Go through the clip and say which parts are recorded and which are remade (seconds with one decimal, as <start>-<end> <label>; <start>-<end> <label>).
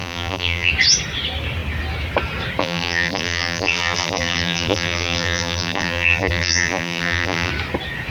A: 0.0-0.7 remade; 0.7-2.6 recorded; 2.6-7.5 remade; 7.5-8.1 recorded